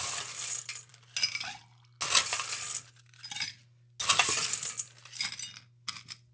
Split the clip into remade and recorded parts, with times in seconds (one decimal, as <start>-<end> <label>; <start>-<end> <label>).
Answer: 0.0-6.3 recorded